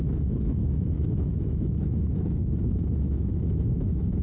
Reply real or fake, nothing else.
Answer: fake